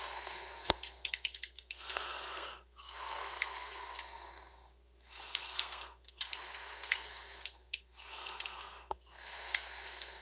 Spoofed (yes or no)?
yes